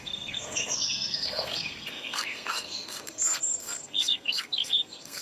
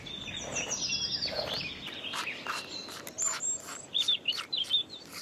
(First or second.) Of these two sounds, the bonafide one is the second